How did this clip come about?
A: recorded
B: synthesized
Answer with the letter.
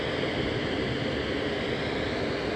A